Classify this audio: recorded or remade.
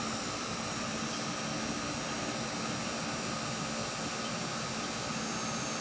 recorded